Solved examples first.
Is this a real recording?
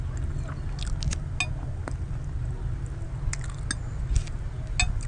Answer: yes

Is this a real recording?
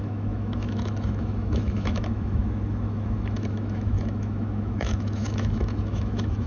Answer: no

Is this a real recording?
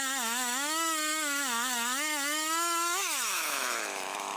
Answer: no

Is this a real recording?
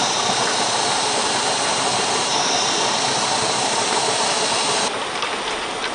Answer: yes